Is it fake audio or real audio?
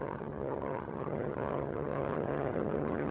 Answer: fake